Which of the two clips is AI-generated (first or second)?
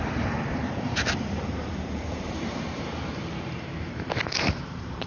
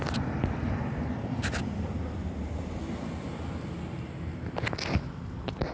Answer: first